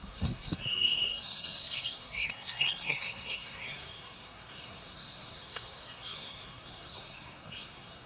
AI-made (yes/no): yes